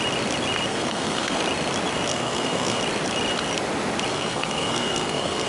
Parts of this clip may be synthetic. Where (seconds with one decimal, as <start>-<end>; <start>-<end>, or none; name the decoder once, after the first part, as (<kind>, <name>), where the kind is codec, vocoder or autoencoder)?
0.7-1.4 (codec, SNAC); 2.1-2.8; 4.1-5.5